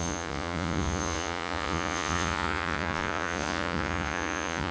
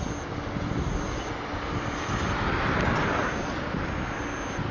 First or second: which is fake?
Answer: first